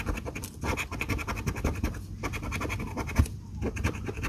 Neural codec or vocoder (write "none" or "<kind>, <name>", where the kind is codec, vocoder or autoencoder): none